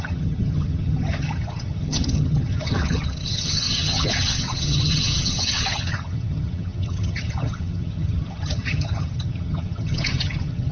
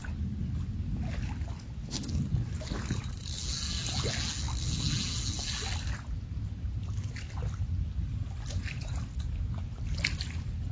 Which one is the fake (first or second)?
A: first